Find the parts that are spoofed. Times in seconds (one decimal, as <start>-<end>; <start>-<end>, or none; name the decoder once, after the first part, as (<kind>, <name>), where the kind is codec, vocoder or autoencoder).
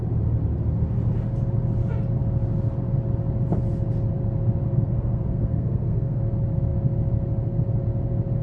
4.7-6.2 (codec, SNAC)